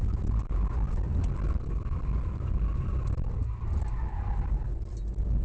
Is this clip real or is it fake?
real